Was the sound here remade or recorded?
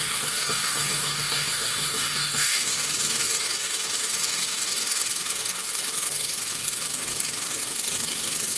remade